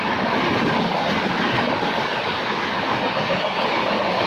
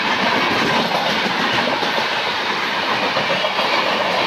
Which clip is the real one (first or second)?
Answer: second